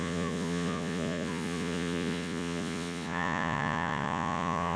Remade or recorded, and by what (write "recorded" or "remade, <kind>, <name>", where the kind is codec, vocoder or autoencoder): remade, vocoder, Vocos